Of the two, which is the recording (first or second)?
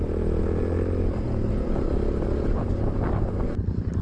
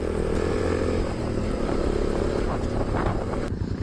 first